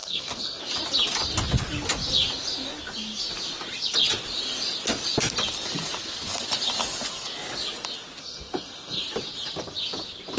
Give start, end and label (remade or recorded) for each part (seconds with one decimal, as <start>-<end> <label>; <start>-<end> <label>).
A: 0.0-0.6 remade; 0.6-8.2 recorded; 8.2-9.0 remade; 9.0-10.4 recorded